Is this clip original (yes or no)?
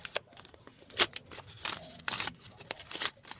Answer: yes